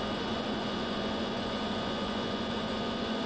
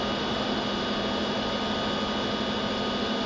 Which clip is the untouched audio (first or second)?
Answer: second